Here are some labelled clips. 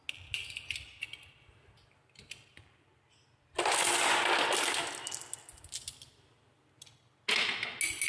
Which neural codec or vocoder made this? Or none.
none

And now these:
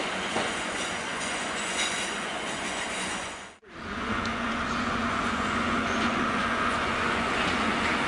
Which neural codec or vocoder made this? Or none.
vocoder, Vocos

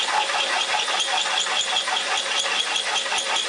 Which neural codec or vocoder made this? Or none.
none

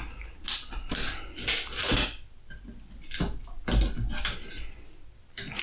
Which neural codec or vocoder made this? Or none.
none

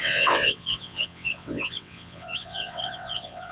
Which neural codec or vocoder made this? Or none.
vocoder, WaveNeXt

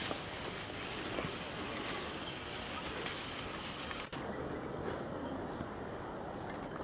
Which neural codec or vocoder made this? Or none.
none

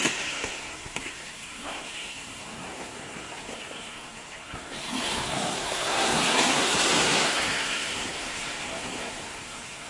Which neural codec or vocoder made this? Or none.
codec, SNAC